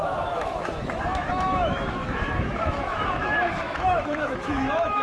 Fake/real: fake